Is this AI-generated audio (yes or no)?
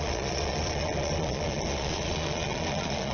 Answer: yes